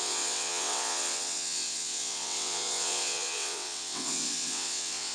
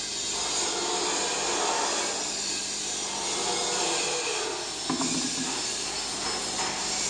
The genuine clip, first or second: second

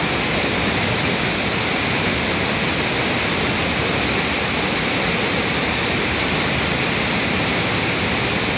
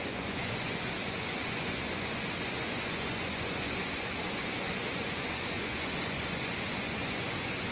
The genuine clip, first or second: first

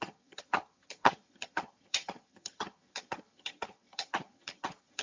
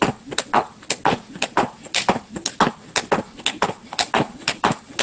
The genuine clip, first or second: second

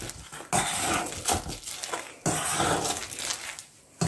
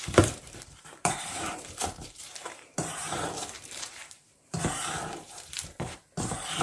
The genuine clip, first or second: first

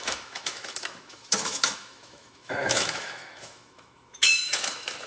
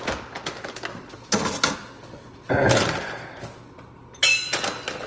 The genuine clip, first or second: second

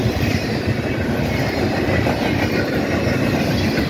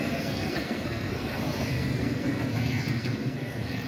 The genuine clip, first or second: first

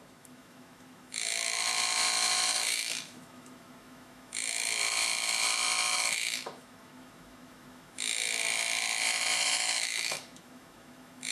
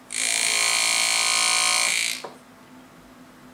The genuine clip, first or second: second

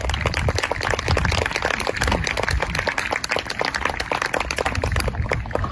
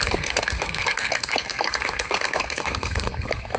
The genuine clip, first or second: first